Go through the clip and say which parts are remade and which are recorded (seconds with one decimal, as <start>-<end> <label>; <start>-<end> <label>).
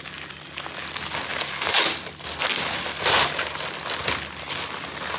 0.0-5.2 recorded